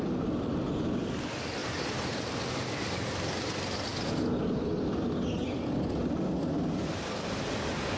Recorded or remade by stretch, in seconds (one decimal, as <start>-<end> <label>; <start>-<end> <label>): 0.0-8.0 recorded